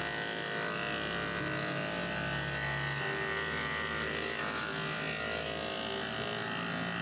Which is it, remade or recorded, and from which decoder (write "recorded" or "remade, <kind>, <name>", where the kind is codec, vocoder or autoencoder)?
recorded